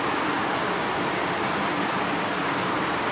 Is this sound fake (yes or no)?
yes